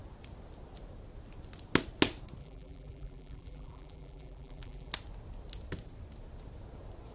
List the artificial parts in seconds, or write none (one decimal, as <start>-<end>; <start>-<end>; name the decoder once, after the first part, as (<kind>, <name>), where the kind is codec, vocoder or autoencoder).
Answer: 2.4-4.9 (vocoder, BigVGAN v2)